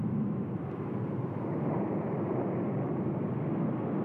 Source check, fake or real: real